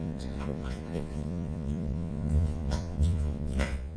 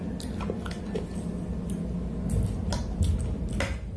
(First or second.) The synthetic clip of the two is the first